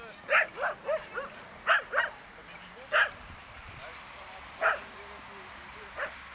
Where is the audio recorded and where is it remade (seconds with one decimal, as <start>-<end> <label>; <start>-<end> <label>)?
0.0-2.6 recorded; 2.6-4.7 remade; 4.7-6.3 recorded